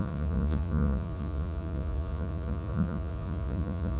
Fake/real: fake